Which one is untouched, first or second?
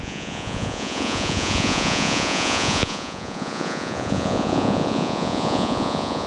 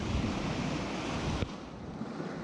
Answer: second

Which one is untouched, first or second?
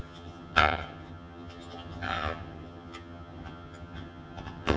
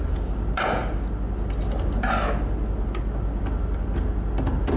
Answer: second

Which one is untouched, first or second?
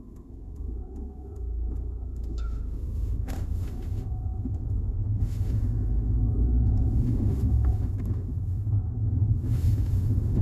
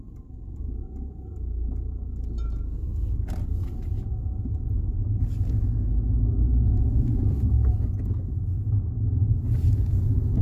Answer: second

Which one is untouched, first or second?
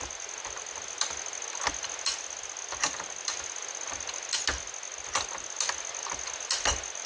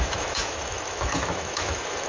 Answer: first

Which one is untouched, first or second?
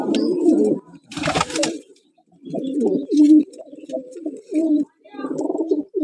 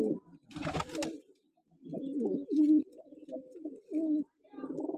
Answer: second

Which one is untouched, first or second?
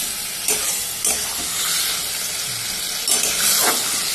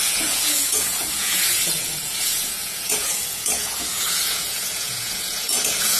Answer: first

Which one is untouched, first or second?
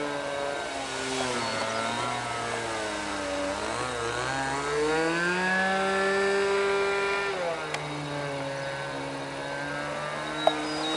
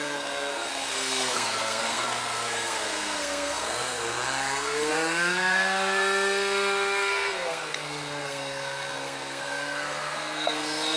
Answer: first